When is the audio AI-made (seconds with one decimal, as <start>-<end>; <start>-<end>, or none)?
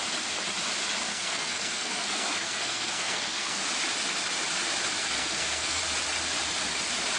1.1-3.6; 5.0-5.8